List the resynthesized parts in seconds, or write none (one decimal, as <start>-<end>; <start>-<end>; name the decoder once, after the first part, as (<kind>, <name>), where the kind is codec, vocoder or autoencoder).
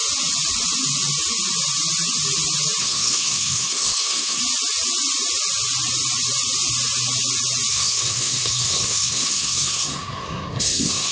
2.8-4.4 (codec, SNAC); 7.7-11.1